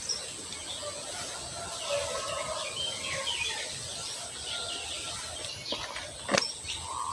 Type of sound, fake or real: real